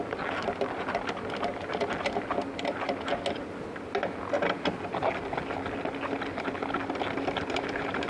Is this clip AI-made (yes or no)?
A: no